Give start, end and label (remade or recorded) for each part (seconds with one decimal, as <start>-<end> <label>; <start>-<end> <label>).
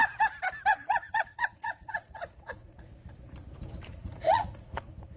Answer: 0.0-0.7 recorded; 0.7-2.9 remade; 2.9-3.9 recorded; 3.9-4.8 remade; 4.8-5.2 recorded